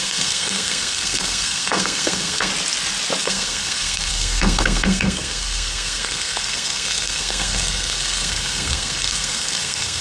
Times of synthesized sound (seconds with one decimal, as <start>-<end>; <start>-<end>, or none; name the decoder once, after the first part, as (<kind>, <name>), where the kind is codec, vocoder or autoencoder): 0.0-2.5 (codec, SNAC); 3.2-10.0